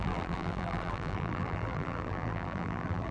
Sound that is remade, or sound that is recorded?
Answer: remade